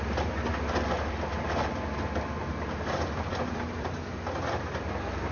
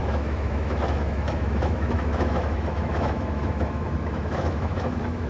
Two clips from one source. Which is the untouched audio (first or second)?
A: first